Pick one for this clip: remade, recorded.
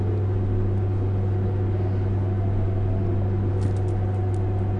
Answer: recorded